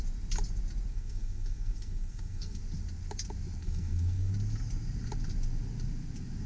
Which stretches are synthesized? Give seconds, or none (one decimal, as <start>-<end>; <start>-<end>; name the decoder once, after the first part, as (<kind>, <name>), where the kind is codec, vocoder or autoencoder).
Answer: 0.9-2.6 (codec, SNAC); 3.6-4.3